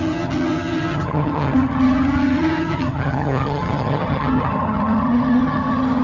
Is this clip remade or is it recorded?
remade